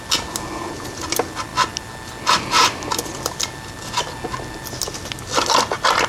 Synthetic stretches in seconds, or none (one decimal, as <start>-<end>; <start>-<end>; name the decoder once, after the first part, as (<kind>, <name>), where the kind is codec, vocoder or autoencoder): none